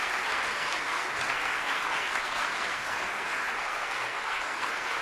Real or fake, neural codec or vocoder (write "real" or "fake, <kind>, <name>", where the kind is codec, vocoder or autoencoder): fake, codec, SNAC